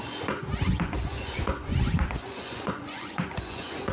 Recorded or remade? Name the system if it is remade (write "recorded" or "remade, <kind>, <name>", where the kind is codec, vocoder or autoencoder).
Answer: remade, vocoder, Vocos